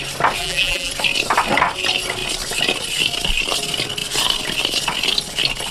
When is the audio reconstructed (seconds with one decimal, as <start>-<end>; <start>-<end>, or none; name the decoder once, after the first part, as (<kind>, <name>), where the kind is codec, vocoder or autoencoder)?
0.4-0.9 (vocoder, BigVGAN v2)